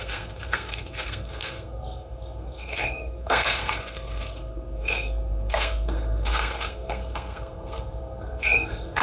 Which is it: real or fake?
fake